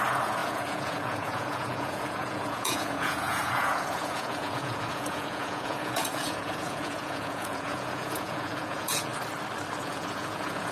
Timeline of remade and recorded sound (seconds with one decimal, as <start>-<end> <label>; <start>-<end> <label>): 0.0-9.1 remade; 9.1-9.8 recorded; 9.8-10.7 remade